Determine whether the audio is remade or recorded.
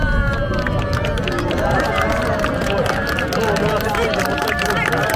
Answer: recorded